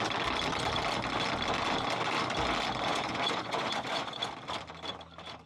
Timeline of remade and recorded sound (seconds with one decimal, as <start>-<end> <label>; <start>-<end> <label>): 0.0-2.9 recorded; 2.9-4.3 remade; 4.3-5.5 recorded